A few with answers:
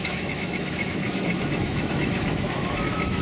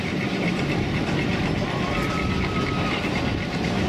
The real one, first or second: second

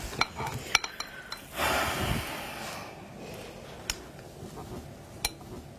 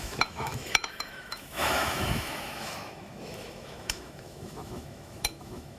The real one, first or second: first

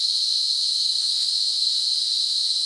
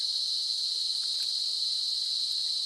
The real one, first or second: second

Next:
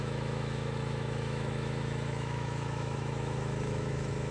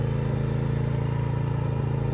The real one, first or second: second